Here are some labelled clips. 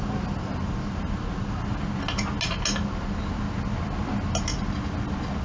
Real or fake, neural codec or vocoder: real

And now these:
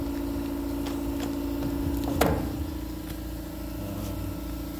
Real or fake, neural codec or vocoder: real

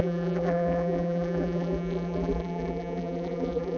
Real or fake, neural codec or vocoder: fake, vocoder, BigVGAN v2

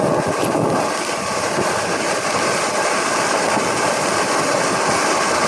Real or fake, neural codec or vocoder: real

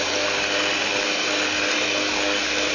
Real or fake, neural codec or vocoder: real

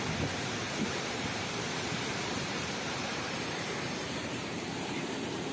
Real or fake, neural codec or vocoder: fake, vocoder, BigVGAN v2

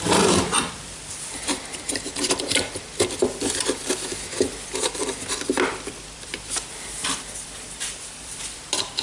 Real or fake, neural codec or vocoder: fake, vocoder, BigVGAN v2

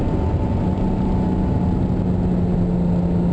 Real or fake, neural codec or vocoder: real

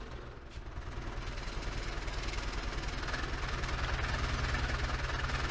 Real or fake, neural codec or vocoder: real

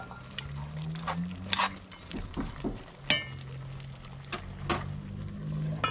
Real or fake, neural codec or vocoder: real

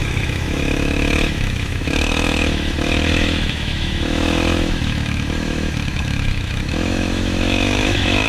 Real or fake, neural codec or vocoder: fake, autoencoder, DAC-VAE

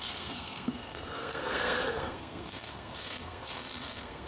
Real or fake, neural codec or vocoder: fake, codec, SNAC